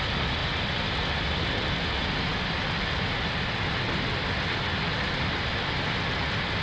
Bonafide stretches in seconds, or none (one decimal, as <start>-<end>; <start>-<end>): 0.0-6.6